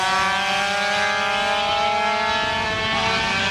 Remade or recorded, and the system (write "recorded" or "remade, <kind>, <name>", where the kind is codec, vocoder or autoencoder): recorded